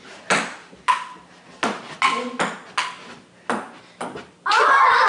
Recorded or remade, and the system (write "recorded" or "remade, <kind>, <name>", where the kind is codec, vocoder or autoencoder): recorded